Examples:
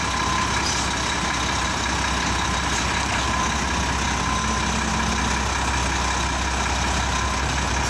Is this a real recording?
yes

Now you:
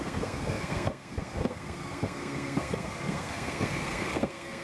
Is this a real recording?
no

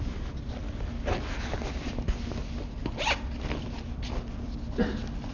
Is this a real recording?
yes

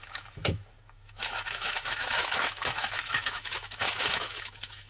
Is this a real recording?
no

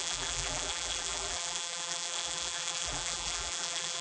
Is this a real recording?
no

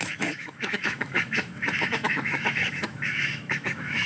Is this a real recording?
no